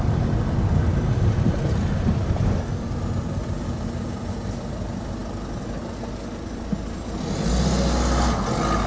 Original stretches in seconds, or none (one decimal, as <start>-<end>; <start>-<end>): 0.0-8.9